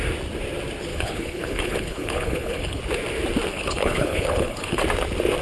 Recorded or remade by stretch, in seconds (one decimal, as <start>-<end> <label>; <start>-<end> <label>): 0.0-0.9 recorded; 0.9-2.8 remade; 2.8-3.5 recorded; 3.5-4.8 remade; 4.8-5.4 recorded